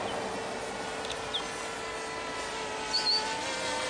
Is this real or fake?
real